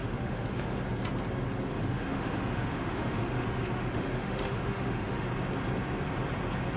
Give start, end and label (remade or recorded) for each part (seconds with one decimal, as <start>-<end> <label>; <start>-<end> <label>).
0.0-0.8 remade; 0.8-1.7 recorded; 1.7-5.3 remade; 5.3-6.8 recorded